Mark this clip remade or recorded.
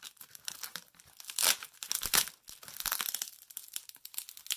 recorded